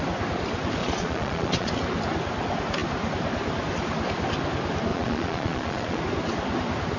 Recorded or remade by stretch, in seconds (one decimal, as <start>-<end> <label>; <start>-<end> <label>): 0.0-0.8 recorded; 0.8-1.7 remade; 1.7-4.9 recorded; 4.9-6.0 remade; 6.0-7.0 recorded